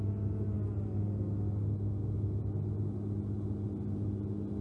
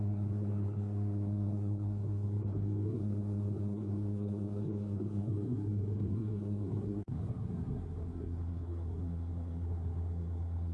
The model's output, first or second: second